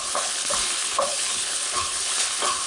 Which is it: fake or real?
fake